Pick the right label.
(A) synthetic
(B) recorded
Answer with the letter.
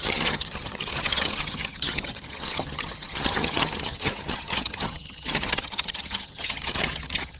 A